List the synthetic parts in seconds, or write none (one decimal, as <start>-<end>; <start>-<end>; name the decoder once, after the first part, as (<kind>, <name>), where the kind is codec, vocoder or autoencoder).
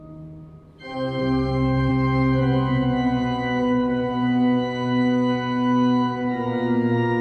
1.2-1.9 (codec, SNAC)